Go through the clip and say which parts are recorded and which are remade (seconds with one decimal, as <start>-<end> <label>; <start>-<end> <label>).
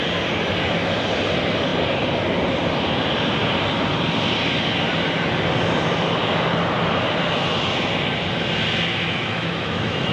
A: 0.0-8.9 recorded; 8.9-10.1 remade